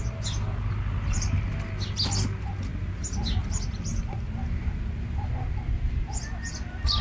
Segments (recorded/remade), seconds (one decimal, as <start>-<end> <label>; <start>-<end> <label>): 0.0-7.0 recorded